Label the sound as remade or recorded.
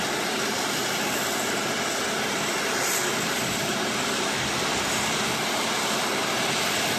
recorded